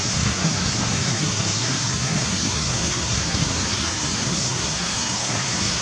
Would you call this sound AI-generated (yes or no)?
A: yes